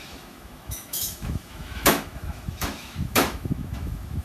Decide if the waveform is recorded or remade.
remade